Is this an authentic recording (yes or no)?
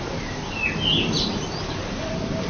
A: yes